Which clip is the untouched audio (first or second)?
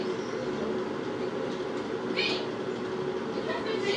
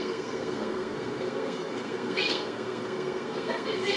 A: first